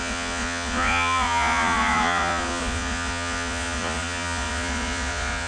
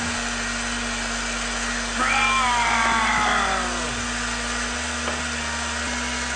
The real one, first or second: second